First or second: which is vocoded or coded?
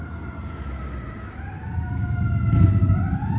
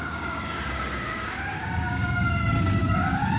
second